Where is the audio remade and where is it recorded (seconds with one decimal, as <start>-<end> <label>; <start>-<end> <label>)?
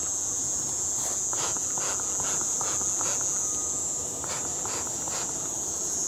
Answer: 0.0-6.1 recorded